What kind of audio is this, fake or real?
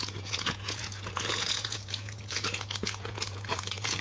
fake